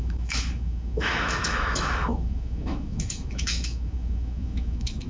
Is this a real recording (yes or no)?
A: no